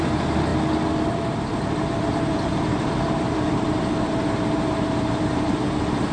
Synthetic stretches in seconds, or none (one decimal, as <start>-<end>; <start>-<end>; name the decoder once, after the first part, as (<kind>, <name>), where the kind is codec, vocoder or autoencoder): 0.0-0.5 (vocoder, BigVGAN v2); 1.1-6.1